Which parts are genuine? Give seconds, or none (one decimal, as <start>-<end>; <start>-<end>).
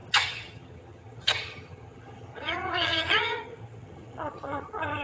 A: none